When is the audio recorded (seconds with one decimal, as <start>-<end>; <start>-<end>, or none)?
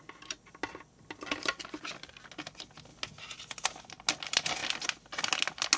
0.0-5.8